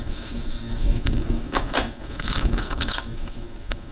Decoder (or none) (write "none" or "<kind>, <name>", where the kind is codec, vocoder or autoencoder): codec, SNAC